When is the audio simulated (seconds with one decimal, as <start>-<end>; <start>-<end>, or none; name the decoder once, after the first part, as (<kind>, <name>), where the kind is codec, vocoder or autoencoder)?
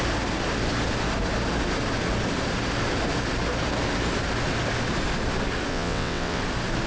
5.7-6.4 (vocoder, WaveNeXt)